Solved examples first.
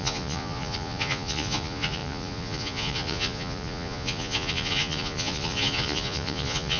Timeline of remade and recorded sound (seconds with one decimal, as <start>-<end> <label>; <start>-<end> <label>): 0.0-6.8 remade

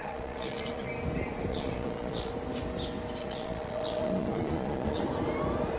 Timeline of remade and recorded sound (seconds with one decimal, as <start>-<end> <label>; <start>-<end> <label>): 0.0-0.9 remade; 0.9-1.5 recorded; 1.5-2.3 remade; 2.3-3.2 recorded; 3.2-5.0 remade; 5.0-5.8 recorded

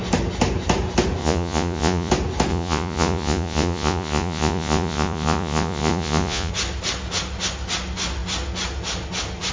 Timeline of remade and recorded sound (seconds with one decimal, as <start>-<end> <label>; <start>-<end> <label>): 0.0-1.2 recorded; 1.2-2.1 remade; 2.1-2.5 recorded; 2.5-6.5 remade; 6.5-9.5 recorded

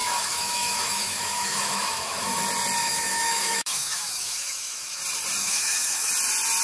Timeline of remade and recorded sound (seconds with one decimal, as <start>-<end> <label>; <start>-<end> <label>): 0.0-2.4 remade; 2.4-2.8 recorded; 2.8-5.0 remade; 5.0-5.4 recorded; 5.4-6.1 remade; 6.1-6.6 recorded